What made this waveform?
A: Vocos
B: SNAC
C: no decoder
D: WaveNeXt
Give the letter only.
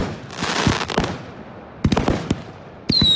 C